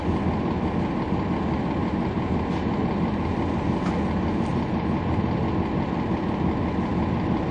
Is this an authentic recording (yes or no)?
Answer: yes